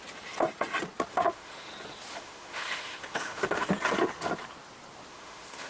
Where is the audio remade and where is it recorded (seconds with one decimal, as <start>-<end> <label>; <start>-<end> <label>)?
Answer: 0.0-1.1 recorded; 1.1-1.7 remade; 1.7-2.1 recorded; 2.1-3.7 remade; 3.7-5.1 recorded; 5.1-5.7 remade